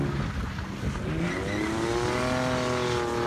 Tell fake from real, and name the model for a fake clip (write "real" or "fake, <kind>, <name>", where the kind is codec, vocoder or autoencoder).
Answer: real